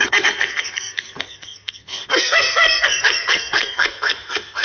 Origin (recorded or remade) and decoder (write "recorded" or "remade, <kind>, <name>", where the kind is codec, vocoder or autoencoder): remade, codec, SNAC